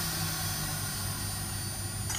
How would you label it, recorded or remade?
recorded